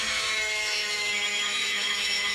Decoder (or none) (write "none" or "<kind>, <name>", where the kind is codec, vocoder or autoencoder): autoencoder, DAC-VAE